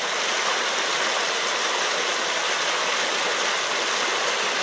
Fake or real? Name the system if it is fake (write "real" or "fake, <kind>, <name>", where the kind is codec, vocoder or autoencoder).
real